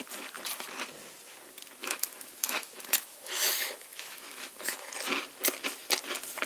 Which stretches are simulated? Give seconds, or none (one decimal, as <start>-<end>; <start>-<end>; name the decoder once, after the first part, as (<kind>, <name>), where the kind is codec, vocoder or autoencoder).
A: 1.8-4.9 (autoencoder, DAC-VAE)